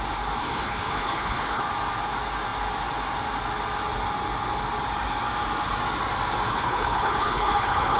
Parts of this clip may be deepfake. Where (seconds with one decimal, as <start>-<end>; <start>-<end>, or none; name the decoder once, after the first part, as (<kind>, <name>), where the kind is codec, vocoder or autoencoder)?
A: 0.4-1.6 (codec, HILCodec); 6.5-8.0